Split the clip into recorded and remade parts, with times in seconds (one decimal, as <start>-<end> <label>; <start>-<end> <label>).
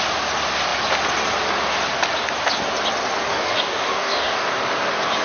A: 0.0-3.3 recorded; 3.3-4.6 remade; 4.6-5.2 recorded